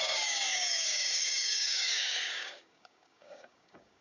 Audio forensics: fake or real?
fake